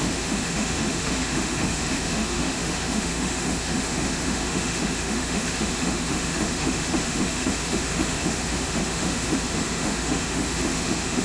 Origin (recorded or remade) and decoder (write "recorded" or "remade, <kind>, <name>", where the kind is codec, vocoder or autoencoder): remade, autoencoder, DAC-VAE